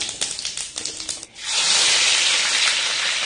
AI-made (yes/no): no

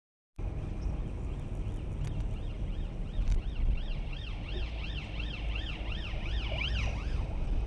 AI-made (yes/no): no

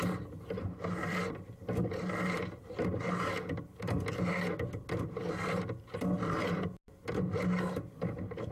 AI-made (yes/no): no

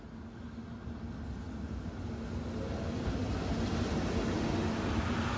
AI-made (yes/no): no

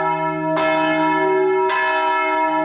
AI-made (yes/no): no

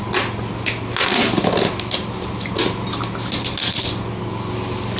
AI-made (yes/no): no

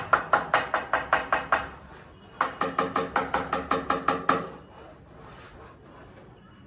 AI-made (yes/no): no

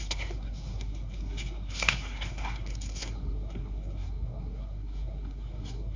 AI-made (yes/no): yes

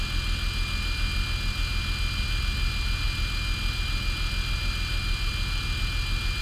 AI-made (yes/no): no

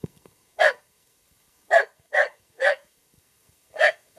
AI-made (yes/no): yes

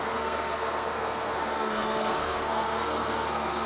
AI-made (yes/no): yes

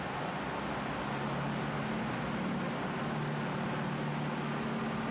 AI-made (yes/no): no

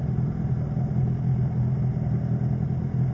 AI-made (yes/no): no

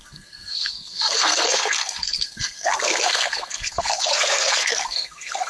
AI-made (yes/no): yes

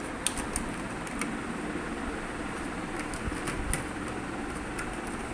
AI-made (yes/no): no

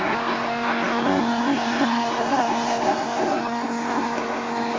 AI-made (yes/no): yes